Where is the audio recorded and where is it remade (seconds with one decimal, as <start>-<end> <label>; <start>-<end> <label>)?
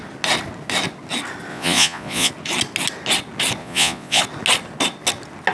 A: 0.0-1.5 recorded; 1.5-2.3 remade; 2.3-3.6 recorded; 3.6-4.2 remade; 4.2-5.5 recorded